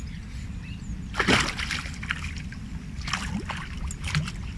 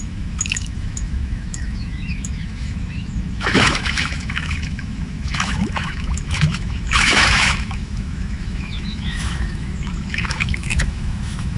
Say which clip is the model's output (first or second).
second